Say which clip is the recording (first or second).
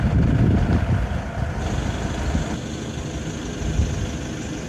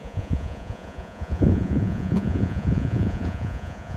first